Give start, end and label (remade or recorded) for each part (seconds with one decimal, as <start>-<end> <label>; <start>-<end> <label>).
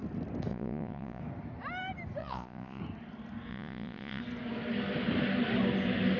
0.0-0.5 recorded; 0.5-1.2 remade; 1.2-2.2 recorded; 2.2-2.8 remade; 2.8-3.5 recorded; 3.5-4.2 remade; 4.2-6.2 recorded